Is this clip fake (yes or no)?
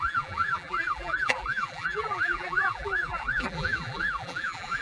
yes